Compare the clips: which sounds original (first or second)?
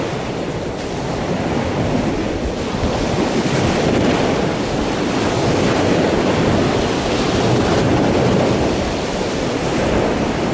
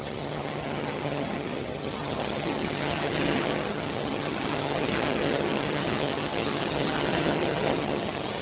first